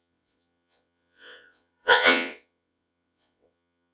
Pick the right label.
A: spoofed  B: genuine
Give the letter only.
A